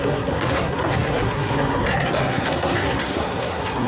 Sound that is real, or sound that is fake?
fake